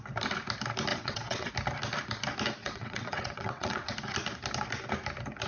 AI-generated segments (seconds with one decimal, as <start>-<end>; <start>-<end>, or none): 0.9-1.5; 2.6-3.9